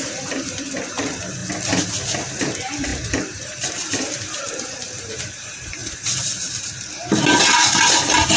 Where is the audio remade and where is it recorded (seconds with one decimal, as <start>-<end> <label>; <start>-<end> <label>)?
0.0-1.4 remade; 1.4-2.4 recorded; 2.4-8.4 remade